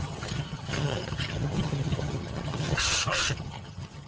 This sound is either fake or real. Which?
fake